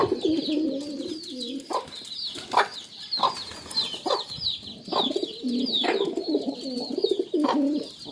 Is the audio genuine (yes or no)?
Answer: yes